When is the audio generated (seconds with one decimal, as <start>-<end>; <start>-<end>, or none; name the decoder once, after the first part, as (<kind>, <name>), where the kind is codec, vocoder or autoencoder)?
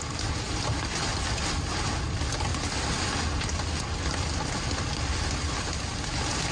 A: none